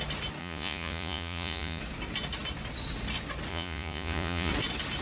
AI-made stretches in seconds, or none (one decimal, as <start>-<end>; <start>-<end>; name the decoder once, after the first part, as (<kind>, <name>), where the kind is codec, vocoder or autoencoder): 0.4-1.8 (vocoder, Vocos); 3.5-4.5